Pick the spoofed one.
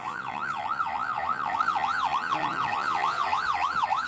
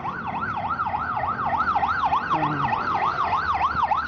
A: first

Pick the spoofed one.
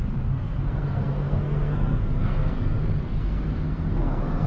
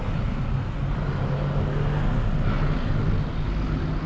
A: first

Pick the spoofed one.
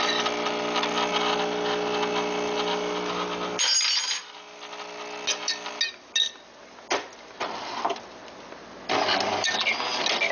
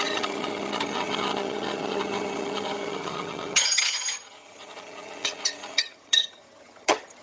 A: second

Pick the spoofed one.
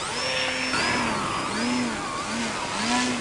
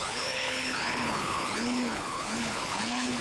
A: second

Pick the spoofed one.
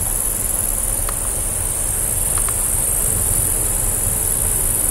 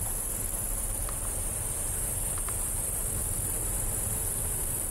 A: second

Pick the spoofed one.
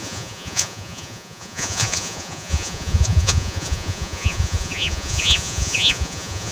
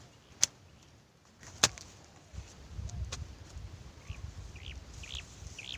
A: first